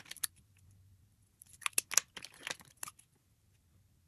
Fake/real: real